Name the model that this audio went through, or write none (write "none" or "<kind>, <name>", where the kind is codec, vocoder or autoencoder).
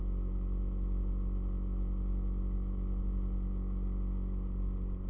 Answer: none